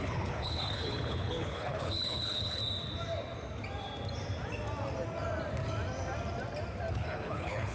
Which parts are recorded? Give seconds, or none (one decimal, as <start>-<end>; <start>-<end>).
2.6-6.9